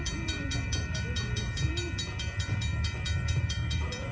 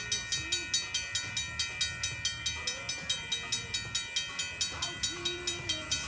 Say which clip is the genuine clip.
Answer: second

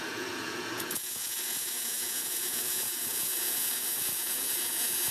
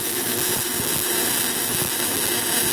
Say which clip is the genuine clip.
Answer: second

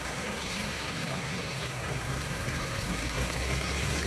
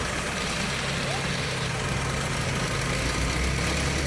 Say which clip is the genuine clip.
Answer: second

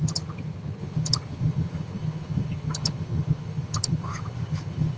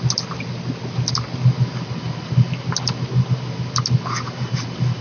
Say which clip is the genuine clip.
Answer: second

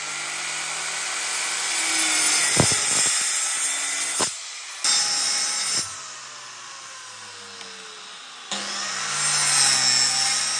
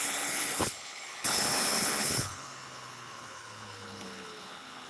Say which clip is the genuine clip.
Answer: first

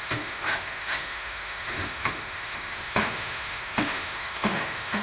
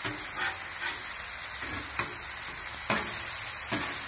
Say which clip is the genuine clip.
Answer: second